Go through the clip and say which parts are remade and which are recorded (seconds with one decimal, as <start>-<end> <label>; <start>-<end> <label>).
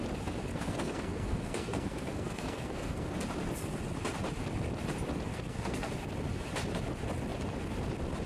0.0-0.5 recorded; 0.5-3.1 remade; 3.1-5.3 recorded; 5.3-5.9 remade; 5.9-8.3 recorded